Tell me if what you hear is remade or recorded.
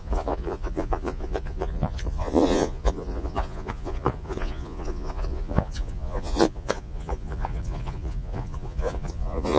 remade